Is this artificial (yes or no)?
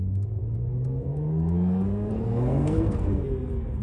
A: yes